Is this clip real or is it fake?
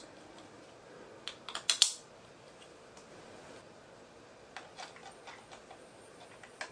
real